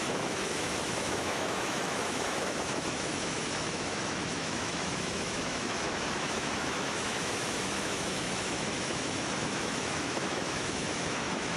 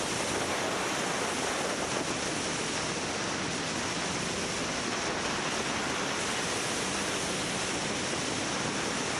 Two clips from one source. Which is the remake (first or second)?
first